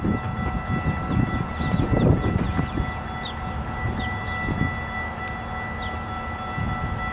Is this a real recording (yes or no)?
yes